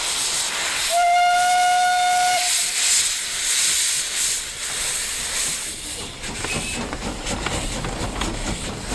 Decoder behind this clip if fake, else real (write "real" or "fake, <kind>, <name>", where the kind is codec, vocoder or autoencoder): real